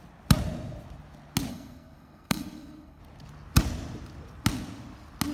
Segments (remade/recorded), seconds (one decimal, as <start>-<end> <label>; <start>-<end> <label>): 0.0-1.5 recorded; 1.5-3.0 remade; 3.0-5.3 recorded